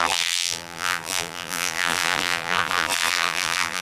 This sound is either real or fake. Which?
fake